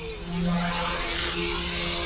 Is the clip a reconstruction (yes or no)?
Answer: no